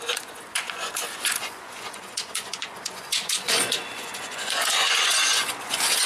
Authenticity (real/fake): fake